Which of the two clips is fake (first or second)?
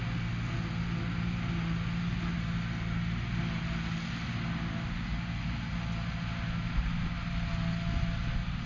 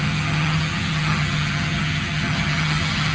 second